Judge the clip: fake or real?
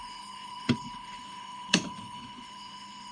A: fake